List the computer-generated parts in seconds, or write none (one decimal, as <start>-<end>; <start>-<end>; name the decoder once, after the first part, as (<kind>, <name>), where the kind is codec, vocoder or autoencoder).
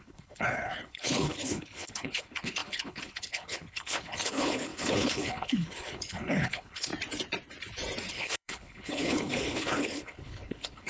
0.0-6.9 (codec, HILCodec); 8.1-10.9